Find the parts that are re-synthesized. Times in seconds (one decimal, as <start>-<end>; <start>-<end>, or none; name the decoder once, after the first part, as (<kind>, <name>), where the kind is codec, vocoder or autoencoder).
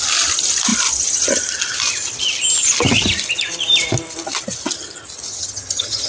5.3-6.1 (vocoder, HiFi-GAN)